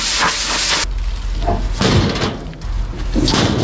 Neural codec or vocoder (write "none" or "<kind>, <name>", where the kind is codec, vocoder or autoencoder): none